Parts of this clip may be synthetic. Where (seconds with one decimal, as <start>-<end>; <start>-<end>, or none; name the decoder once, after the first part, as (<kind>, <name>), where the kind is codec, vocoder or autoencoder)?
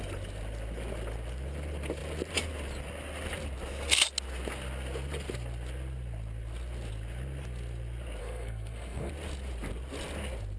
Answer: 8.2-9.1 (codec, SNAC)